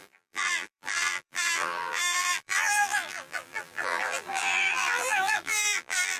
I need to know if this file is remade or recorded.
remade